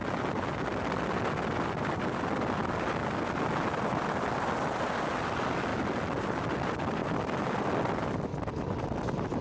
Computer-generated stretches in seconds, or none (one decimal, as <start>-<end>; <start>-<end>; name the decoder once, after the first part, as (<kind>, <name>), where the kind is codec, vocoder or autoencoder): none